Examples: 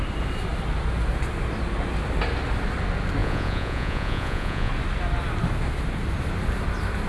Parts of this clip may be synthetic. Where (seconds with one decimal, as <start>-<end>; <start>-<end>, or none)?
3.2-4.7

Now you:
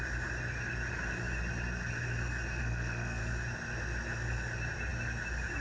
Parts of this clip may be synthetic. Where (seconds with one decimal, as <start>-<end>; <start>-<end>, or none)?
2.6-3.2

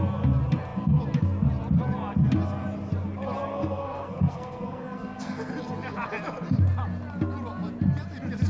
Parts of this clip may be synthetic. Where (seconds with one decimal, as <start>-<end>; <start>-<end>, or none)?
3.5-5.5

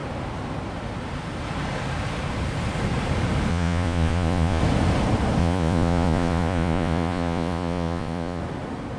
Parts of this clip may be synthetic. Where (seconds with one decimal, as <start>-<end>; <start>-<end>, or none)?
3.5-4.6; 5.4-8.4

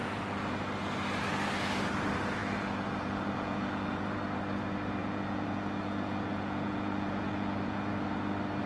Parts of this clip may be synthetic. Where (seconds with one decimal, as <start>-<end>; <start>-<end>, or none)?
0.0-0.5; 2.4-4.0; 5.0-7.9

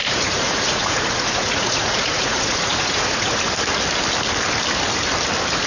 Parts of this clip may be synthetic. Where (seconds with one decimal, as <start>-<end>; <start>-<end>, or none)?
0.0-3.4